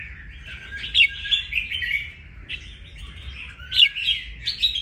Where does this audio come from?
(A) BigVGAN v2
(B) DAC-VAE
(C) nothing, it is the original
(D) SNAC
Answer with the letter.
C